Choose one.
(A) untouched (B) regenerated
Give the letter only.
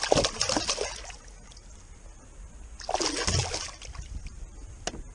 A